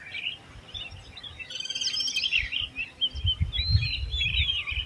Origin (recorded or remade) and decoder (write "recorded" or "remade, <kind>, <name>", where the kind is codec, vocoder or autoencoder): recorded